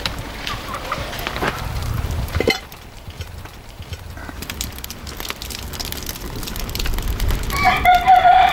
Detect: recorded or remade remade